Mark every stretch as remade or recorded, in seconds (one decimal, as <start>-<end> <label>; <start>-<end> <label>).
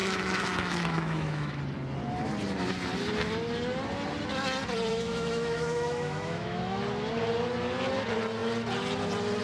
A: 0.0-1.6 remade; 1.6-4.9 recorded; 4.9-6.8 remade; 6.8-9.4 recorded